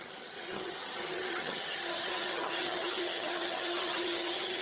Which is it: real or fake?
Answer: fake